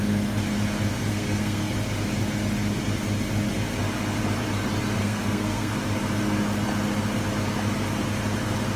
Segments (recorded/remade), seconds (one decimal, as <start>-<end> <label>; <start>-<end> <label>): 0.0-1.1 recorded; 1.1-1.7 remade; 1.7-5.0 recorded; 5.0-5.7 remade; 5.7-8.8 recorded